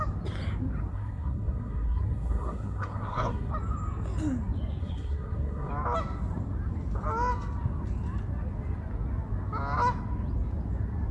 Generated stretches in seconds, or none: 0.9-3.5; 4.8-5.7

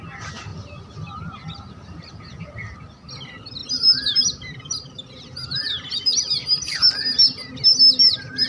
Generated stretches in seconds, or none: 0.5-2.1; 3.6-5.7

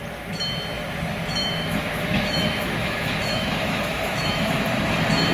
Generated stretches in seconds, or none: 1.4-4.6